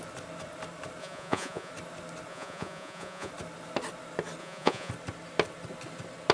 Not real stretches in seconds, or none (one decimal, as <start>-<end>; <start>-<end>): 1.0-1.7; 2.3-3.3; 4.4-4.9

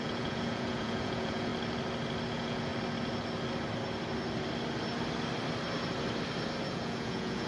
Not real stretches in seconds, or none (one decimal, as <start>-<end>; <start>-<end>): 0.0-1.5; 2.3-2.7; 6.7-7.5

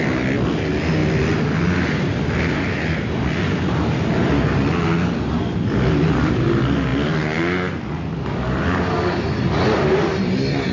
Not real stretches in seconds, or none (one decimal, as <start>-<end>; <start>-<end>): none

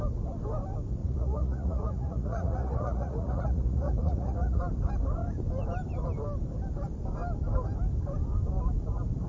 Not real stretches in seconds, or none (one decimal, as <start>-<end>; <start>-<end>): 1.0-4.6

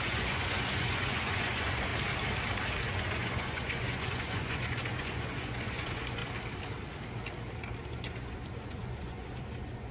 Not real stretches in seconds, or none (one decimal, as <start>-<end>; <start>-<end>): 0.0-1.9; 2.8-6.2; 7.9-9.9